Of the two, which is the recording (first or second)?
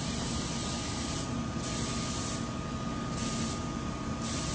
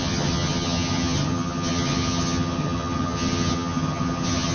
first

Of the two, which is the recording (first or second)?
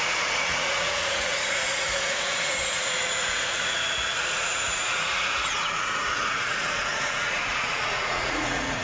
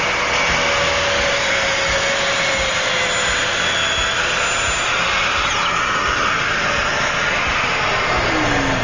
second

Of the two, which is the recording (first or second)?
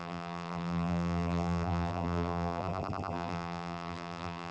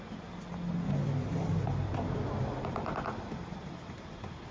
second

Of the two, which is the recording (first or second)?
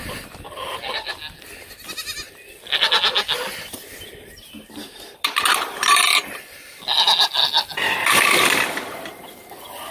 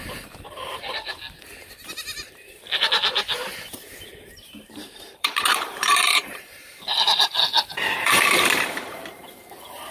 first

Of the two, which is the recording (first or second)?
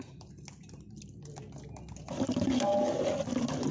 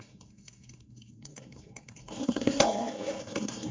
first